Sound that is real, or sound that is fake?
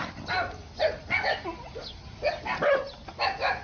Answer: real